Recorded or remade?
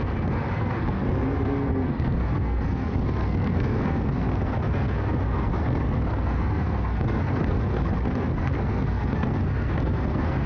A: remade